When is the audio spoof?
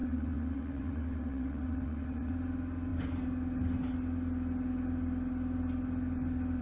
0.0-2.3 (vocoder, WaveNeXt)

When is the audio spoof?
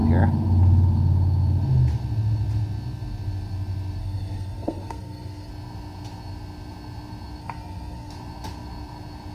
4.0-5.5 (codec, SNAC); 7.4-8.1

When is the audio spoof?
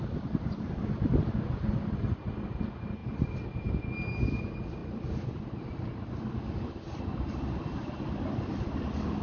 3.0-3.8 (vocoder, BigVGAN v2); 4.8-6.2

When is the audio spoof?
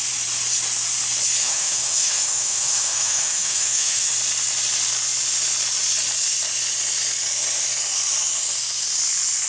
1.4-4.1 (autoencoder, DAC-VAE)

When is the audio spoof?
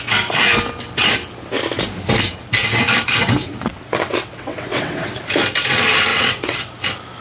3.4-5.2 (vocoder, WaveNeXt); 6.1-6.7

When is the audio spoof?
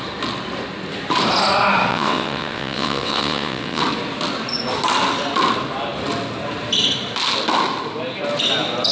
1.9-3.8 (vocoder, WaveNeXt)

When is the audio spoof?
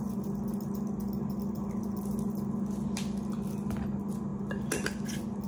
none